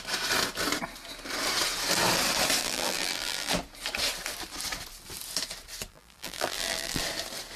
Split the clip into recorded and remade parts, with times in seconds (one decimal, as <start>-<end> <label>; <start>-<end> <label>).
0.0-2.6 recorded; 2.6-3.5 remade; 3.5-5.9 recorded; 5.9-7.0 remade; 7.0-7.6 recorded